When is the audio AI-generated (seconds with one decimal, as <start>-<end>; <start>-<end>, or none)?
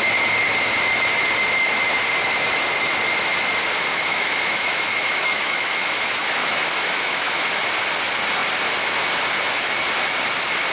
3.9-7.6